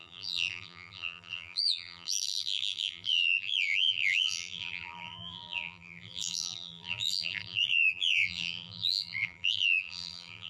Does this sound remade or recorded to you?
remade